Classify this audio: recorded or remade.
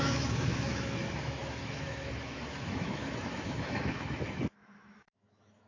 remade